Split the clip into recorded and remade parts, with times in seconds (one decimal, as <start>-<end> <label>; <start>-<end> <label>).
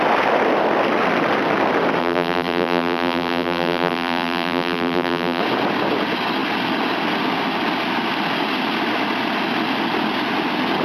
0.0-2.0 recorded; 2.0-5.4 remade; 5.4-10.8 recorded